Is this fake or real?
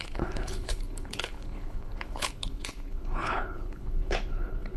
fake